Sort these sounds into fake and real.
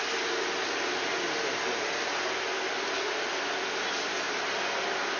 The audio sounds real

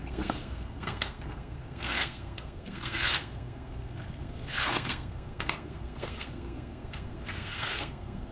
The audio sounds fake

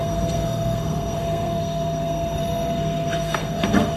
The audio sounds fake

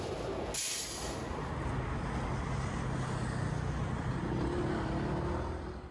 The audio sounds real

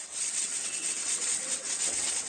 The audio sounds fake